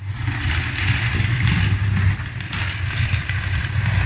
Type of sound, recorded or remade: recorded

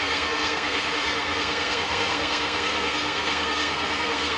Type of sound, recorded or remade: remade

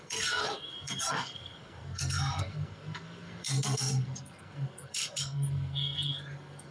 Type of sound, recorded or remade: remade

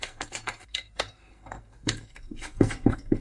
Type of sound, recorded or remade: remade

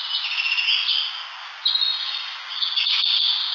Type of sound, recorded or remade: recorded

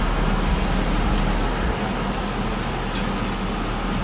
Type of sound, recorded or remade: recorded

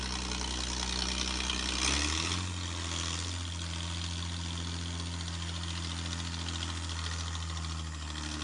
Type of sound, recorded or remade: recorded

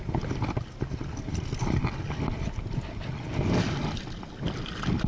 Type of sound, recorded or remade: recorded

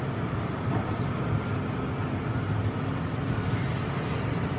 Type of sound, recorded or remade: recorded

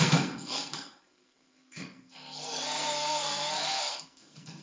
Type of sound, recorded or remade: remade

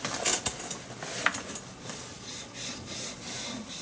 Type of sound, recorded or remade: recorded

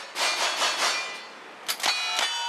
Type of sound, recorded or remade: recorded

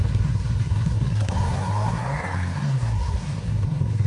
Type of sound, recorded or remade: remade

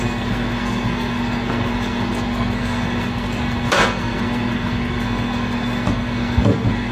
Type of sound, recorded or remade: remade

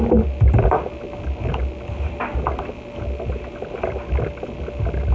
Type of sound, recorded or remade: recorded